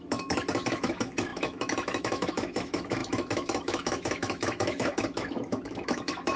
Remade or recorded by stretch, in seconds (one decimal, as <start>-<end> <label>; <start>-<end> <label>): 0.0-6.4 remade